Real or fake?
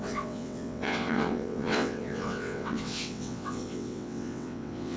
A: fake